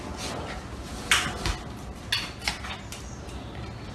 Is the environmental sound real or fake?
real